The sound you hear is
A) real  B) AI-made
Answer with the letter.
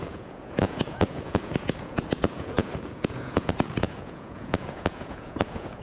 B